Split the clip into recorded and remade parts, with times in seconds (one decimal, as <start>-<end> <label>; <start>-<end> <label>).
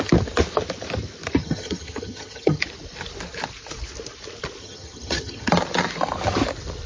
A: 0.0-1.4 recorded; 1.4-2.6 remade; 2.6-4.6 recorded; 4.6-5.5 remade; 5.5-6.9 recorded